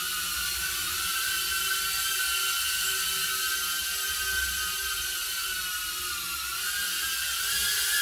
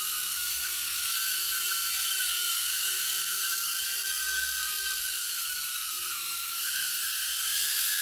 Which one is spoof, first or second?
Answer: second